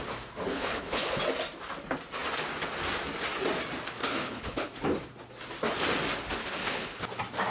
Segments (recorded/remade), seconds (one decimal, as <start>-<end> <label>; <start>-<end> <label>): 0.0-0.5 recorded; 0.5-1.2 remade; 1.2-4.0 recorded; 4.0-4.7 remade; 4.7-6.4 recorded; 6.4-7.0 remade; 7.0-7.5 recorded